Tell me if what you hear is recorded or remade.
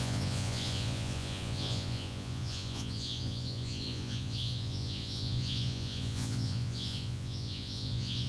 remade